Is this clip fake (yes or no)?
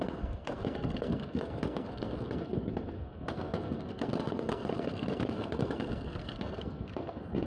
yes